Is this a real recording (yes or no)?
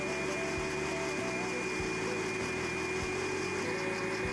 yes